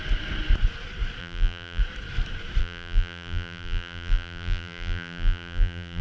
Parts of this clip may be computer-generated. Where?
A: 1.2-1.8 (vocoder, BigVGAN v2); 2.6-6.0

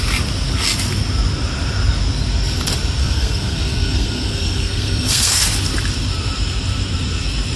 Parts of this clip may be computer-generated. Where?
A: 3.0-5.4 (codec, SNAC)

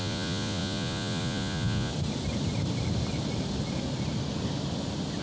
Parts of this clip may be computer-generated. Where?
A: 0.0-1.9 (vocoder, Vocos)

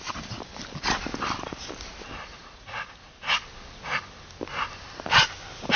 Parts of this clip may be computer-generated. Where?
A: none